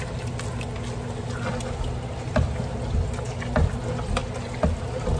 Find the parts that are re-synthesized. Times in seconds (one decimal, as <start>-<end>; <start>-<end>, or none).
none